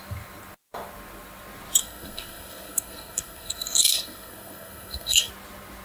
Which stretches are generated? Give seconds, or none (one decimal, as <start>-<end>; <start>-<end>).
1.8-5.3